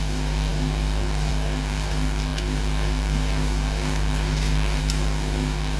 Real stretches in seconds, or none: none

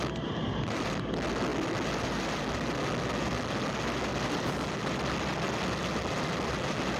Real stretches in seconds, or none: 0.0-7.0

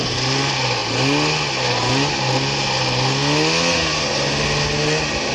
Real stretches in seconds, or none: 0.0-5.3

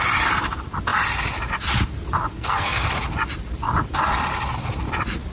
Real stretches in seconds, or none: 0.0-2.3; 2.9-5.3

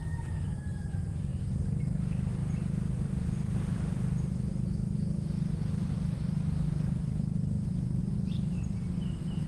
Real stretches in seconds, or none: 0.0-2.4; 3.9-8.0

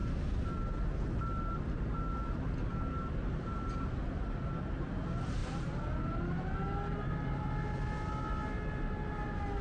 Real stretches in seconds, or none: 0.0-9.6